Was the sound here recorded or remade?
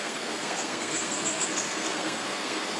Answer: remade